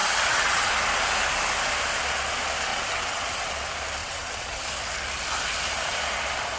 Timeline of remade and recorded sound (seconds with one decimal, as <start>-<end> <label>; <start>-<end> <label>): 0.0-0.7 remade; 0.7-2.7 recorded; 2.7-3.5 remade; 3.5-4.0 recorded; 4.0-4.6 remade; 4.6-6.6 recorded